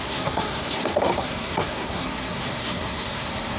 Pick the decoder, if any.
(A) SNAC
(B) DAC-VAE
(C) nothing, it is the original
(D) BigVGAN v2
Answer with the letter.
A